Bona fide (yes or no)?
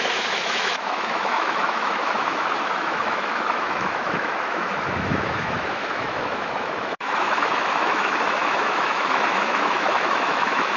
no